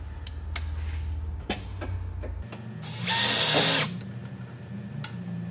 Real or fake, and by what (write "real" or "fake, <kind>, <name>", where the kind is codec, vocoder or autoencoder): real